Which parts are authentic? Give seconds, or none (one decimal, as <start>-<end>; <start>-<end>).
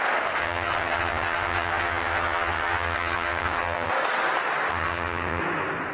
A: 0.0-0.4; 3.9-4.7; 5.4-5.9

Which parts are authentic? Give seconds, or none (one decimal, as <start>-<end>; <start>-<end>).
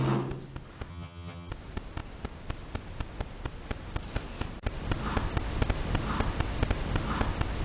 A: 0.0-0.9; 1.5-7.6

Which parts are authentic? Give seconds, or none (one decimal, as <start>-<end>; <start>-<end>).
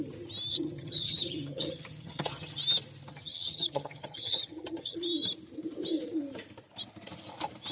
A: 0.0-0.5; 2.6-3.1; 5.0-7.7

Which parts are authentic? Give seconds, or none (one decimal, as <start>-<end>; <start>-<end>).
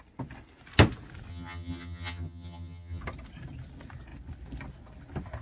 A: 0.0-1.3; 3.0-5.4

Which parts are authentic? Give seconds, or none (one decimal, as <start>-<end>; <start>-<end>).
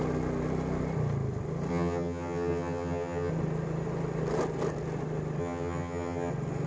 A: 0.0-1.7; 3.3-5.4; 6.3-6.7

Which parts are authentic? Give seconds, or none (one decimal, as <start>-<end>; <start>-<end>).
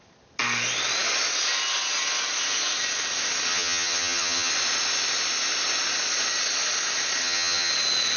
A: 0.0-3.5; 4.5-7.2; 7.7-8.2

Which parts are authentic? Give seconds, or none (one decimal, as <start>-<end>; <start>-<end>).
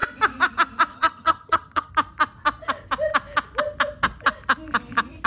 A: 0.0-0.9; 1.9-5.3